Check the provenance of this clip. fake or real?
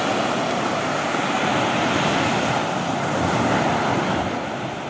real